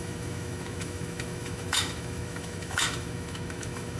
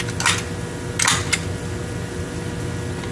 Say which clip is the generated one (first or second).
first